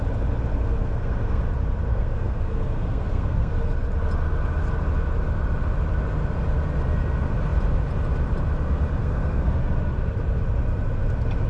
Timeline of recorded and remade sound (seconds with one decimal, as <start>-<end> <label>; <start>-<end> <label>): 0.0-0.5 recorded; 0.5-1.4 remade; 1.4-1.9 recorded; 1.9-3.5 remade; 3.5-9.0 recorded; 9.0-9.5 remade; 9.5-11.5 recorded